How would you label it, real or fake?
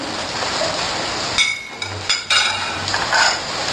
real